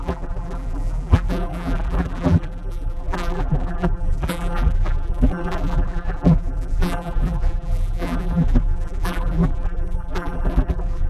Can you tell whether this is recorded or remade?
remade